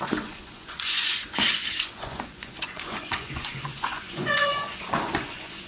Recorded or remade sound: remade